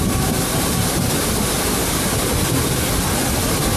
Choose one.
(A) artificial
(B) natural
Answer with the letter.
B